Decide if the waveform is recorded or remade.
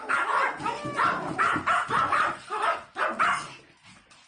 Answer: recorded